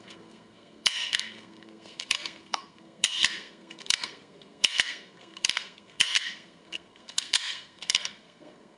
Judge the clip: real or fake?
fake